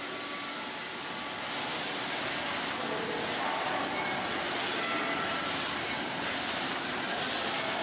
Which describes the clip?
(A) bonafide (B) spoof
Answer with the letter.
A